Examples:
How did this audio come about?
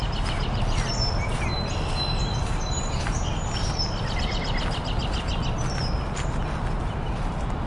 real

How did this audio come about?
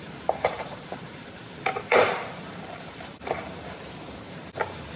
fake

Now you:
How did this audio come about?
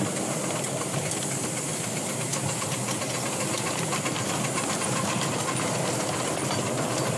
real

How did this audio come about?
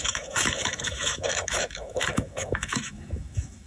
fake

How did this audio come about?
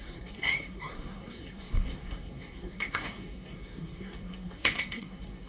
fake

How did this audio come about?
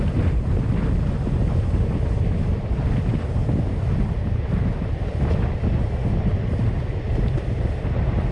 real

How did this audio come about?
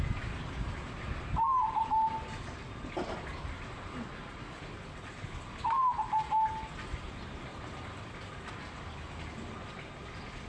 real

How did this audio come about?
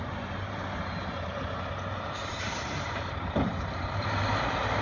fake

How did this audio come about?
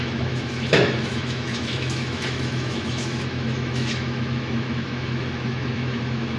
fake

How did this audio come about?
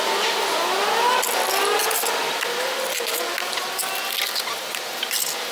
real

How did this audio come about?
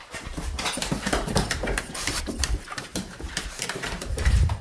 fake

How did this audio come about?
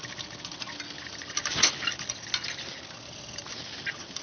real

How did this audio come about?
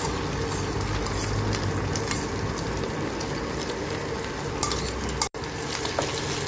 real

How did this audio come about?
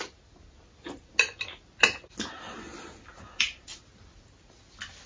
real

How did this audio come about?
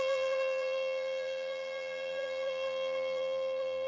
fake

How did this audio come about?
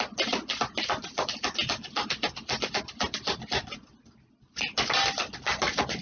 real